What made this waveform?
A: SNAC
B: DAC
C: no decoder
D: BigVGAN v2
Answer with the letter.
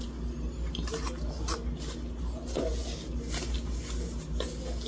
C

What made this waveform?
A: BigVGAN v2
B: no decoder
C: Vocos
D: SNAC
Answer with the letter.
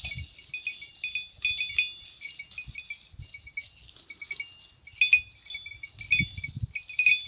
B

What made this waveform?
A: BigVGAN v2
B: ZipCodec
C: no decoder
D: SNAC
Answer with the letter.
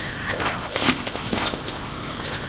B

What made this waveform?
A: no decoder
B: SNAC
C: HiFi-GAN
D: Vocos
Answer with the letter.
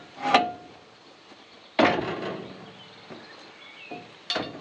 A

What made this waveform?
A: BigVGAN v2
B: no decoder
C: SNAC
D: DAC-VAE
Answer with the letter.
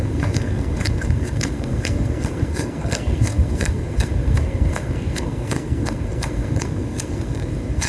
C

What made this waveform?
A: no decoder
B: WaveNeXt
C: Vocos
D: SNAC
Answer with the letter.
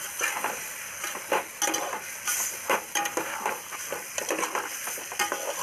A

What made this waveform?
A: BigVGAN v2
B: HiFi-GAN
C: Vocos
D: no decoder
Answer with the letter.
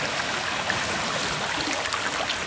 D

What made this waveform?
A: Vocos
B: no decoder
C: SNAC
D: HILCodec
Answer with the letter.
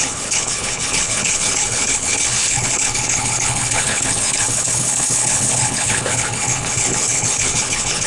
D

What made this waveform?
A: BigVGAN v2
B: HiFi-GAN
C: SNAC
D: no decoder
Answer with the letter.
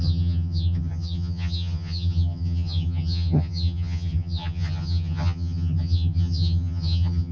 B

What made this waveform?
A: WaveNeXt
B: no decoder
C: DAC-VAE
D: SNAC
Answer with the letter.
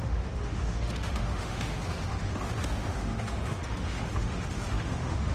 C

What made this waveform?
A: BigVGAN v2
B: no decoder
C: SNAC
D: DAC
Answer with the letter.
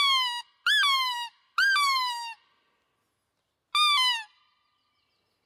B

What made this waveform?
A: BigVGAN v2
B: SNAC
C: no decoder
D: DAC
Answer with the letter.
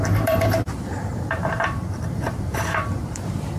A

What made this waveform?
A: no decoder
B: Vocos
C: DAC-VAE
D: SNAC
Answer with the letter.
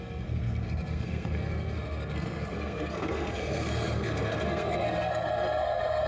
D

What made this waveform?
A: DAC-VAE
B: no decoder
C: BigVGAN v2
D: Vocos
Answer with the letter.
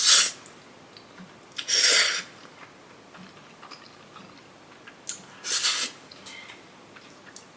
B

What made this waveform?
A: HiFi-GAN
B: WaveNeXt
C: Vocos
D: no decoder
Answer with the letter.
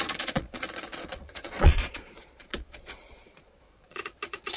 C